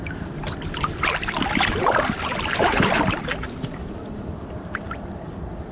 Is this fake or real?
fake